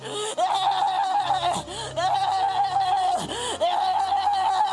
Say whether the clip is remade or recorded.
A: recorded